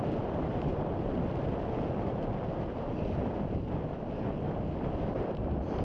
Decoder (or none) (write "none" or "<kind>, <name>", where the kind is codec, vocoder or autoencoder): vocoder, BigVGAN v2